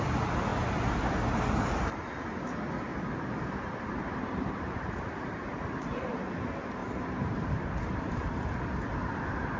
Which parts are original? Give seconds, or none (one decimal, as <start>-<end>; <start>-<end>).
0.0-2.9; 6.1-6.8; 8.0-9.6